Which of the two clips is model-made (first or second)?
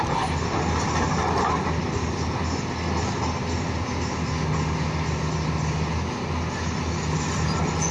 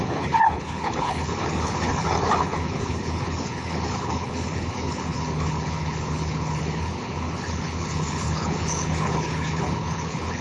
second